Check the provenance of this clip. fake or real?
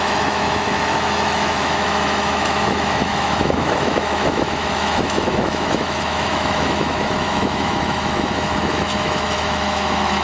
fake